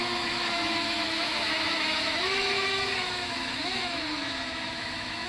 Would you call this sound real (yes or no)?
no